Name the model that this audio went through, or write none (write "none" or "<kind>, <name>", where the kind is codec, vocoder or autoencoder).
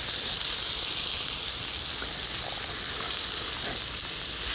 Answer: none